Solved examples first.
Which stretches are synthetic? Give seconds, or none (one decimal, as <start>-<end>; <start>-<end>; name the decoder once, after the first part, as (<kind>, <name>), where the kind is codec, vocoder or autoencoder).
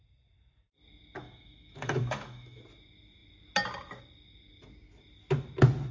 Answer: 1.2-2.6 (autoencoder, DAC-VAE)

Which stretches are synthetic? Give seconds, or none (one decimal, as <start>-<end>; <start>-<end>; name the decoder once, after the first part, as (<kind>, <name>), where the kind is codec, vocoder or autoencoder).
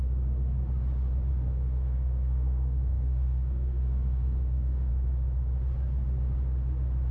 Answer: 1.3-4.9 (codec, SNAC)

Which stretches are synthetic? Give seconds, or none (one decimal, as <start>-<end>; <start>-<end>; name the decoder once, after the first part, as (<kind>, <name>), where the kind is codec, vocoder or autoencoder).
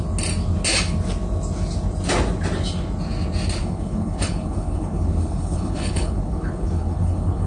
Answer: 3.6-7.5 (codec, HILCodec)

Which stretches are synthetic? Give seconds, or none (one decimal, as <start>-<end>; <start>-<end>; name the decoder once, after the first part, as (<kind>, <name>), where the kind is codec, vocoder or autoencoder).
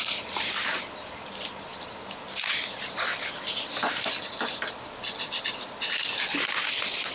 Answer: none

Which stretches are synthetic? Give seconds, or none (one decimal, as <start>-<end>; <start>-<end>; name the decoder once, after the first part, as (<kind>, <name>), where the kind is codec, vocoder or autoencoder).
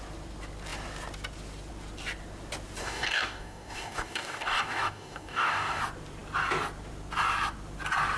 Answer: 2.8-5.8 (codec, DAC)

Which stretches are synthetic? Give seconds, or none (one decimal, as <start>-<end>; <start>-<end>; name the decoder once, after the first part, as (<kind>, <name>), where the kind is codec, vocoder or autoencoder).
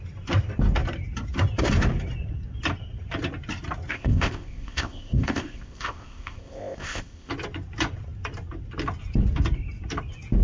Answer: 3.9-7.3 (codec, ZipCodec)